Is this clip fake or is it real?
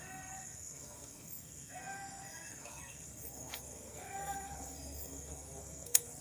fake